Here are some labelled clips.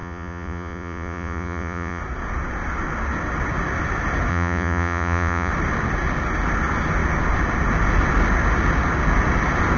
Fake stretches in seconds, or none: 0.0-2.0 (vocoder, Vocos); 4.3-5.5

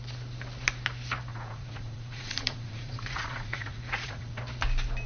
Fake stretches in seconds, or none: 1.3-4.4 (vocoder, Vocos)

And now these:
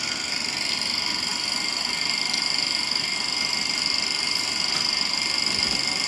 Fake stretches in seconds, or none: none